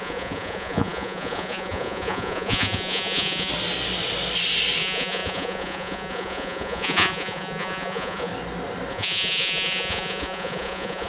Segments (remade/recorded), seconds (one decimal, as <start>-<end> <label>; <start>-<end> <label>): 0.0-3.5 remade; 3.5-4.8 recorded; 4.8-8.3 remade; 8.3-8.9 recorded; 8.9-11.1 remade